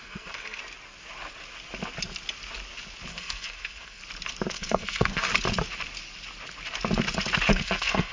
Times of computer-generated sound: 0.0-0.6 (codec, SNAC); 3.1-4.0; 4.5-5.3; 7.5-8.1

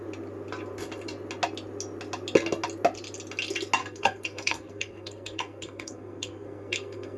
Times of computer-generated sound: 3.8-7.2 (codec, SNAC)

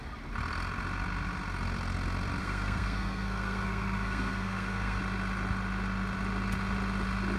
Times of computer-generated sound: 2.4-5.0 (codec, SNAC)

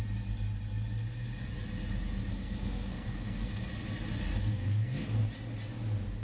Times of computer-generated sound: 2.3-3.7 (codec, SNAC); 4.4-5.2

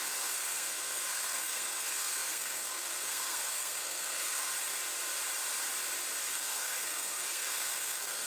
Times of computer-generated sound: 0.0-4.5 (codec, SNAC); 6.3-8.3